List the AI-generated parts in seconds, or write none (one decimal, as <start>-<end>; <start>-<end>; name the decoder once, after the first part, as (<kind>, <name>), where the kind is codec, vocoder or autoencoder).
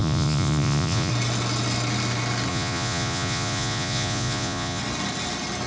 0.0-1.1 (vocoder, Vocos); 2.5-4.8